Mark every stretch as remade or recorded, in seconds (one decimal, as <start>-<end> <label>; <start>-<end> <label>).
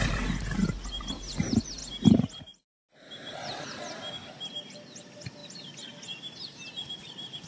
0.0-7.5 recorded